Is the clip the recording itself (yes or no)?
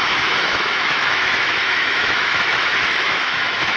no